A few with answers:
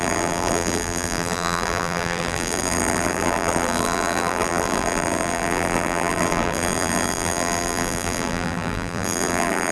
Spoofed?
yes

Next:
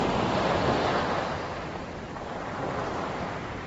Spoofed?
yes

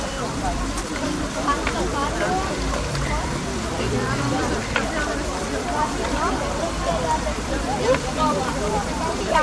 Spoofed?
yes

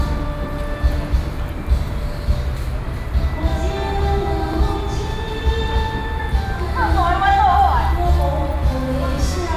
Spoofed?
no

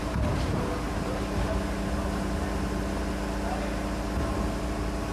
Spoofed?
no